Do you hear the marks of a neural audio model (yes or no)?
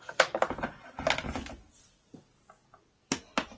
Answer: no